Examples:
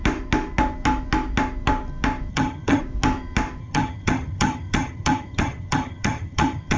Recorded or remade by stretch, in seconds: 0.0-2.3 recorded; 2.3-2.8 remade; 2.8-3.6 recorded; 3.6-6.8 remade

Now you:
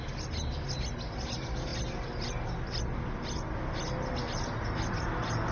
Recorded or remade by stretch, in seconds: 0.0-5.5 recorded

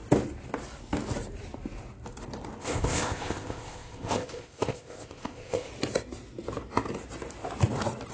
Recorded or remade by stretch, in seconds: 0.0-2.6 recorded; 2.6-5.7 remade; 5.7-8.1 recorded

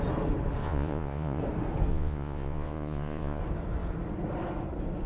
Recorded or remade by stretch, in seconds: 0.0-0.6 recorded; 0.6-1.4 remade; 1.4-1.9 recorded; 1.9-3.4 remade; 3.4-5.1 recorded

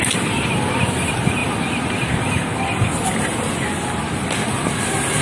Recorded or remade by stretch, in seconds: 0.0-5.2 recorded

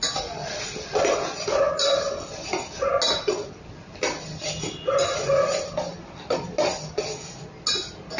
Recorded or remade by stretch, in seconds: 0.0-8.2 recorded

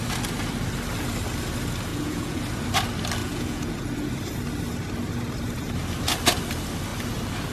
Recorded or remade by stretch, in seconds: 0.0-1.9 recorded; 1.9-2.4 remade; 2.4-3.2 recorded; 3.2-4.1 remade; 4.1-7.5 recorded